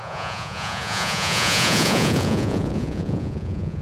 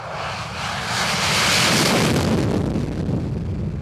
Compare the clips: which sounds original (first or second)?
second